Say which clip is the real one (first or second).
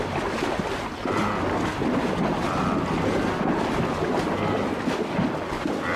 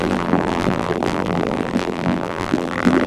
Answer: first